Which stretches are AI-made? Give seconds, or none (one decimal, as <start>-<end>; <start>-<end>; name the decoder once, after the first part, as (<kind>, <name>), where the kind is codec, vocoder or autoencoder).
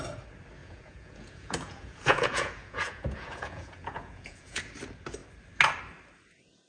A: 0.6-4.6 (vocoder, Vocos)